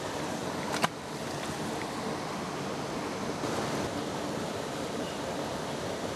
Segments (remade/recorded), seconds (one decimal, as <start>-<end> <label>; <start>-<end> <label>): 0.0-0.4 remade; 0.4-4.1 recorded; 4.1-6.2 remade